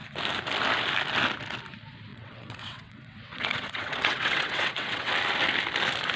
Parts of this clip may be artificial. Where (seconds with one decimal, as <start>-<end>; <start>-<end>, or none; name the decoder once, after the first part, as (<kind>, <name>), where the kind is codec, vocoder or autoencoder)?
2.1-5.1 (vocoder, WaveNeXt)

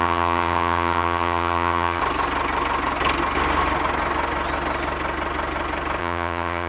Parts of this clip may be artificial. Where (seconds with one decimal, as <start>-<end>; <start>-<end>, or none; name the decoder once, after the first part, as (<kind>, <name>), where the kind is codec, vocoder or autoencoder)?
0.0-2.0 (vocoder, HiFi-GAN); 6.0-6.7

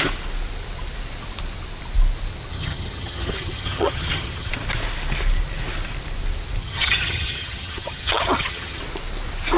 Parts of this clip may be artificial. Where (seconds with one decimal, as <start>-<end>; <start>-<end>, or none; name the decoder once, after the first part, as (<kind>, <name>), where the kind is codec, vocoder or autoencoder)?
2.5-4.5 (vocoder, HiFi-GAN); 6.6-8.8

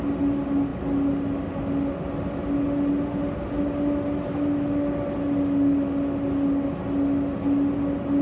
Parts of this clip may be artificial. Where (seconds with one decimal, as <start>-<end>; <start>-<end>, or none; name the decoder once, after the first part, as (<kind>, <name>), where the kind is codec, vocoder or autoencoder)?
none

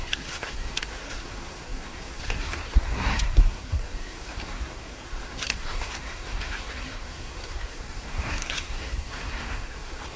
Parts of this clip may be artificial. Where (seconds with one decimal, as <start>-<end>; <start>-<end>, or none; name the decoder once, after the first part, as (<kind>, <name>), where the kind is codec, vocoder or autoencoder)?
0.0-10.2 (codec, SNAC)